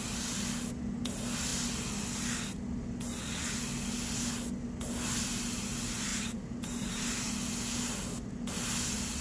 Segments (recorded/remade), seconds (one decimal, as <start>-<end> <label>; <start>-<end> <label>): 0.0-6.1 recorded; 6.1-7.3 remade; 7.3-9.2 recorded